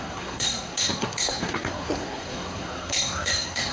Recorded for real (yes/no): no